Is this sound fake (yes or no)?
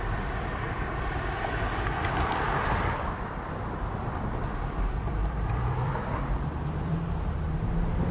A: yes